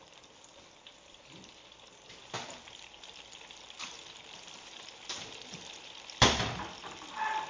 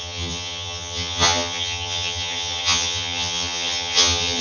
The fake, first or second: second